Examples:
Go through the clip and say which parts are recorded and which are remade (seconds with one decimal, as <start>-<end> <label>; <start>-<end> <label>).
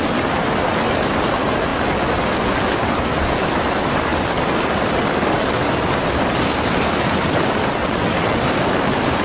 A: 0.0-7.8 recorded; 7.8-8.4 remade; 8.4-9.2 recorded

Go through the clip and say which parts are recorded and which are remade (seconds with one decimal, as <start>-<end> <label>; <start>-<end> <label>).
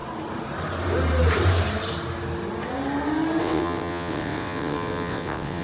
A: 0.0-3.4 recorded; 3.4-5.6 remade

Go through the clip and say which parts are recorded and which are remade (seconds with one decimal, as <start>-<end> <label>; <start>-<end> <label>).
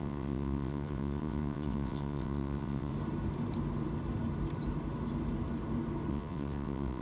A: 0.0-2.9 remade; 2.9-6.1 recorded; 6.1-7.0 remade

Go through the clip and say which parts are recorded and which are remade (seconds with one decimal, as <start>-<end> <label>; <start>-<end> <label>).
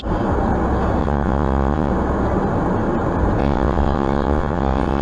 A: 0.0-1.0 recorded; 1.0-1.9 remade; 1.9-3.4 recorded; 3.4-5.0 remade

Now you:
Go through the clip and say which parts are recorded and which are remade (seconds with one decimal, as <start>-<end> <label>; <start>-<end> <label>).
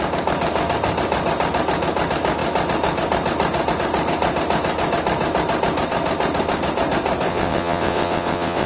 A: 0.0-7.3 recorded; 7.3-8.7 remade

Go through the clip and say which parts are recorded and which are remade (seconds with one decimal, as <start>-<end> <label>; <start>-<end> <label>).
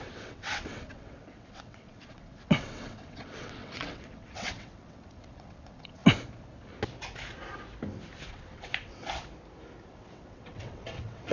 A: 0.0-6.0 remade; 6.0-8.3 recorded; 8.3-9.2 remade; 9.2-9.9 recorded; 9.9-11.3 remade